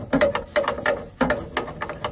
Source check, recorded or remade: recorded